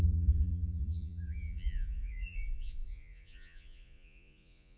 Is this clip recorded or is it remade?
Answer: remade